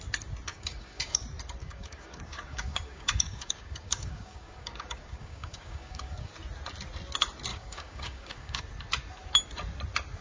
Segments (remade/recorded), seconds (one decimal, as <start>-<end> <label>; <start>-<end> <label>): 0.0-0.5 recorded; 0.5-1.2 remade; 1.2-1.6 recorded; 1.6-6.3 remade; 6.3-7.5 recorded; 7.5-8.6 remade; 8.6-10.2 recorded